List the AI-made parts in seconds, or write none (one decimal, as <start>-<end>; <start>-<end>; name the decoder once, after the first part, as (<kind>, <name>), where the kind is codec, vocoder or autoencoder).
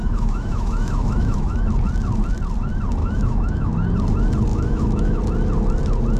0.0-1.7 (autoencoder, DAC-VAE); 3.0-3.7; 4.5-5.2